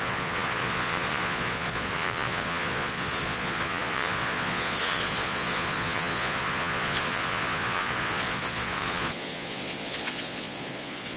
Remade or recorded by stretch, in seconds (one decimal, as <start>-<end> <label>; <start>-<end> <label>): 0.0-11.2 remade